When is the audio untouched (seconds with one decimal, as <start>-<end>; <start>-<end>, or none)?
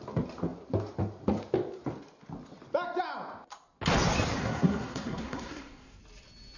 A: 0.0-4.4; 6.0-6.6